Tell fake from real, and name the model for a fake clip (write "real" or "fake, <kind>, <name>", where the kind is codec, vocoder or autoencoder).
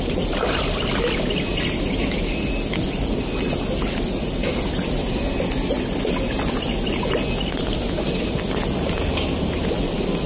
real